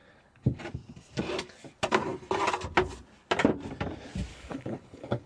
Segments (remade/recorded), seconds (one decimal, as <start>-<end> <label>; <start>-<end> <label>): 0.0-0.6 remade; 0.6-4.3 recorded; 4.3-5.3 remade